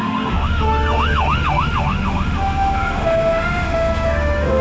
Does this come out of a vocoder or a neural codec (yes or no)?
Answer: yes